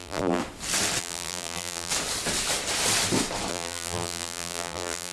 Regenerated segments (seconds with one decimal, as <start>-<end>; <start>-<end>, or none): 0.0-0.4; 1.0-1.9; 3.5-5.1